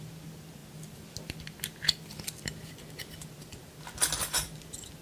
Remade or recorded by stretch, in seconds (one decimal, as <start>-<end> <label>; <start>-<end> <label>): 0.0-5.0 recorded

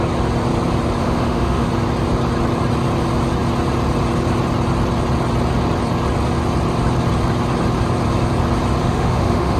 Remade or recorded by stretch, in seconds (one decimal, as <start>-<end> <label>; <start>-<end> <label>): 0.0-1.0 recorded; 1.0-1.7 remade; 1.7-8.8 recorded; 8.8-9.6 remade

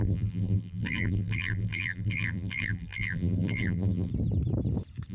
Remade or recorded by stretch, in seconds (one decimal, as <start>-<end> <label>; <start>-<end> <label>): 0.0-4.1 remade; 4.1-5.1 recorded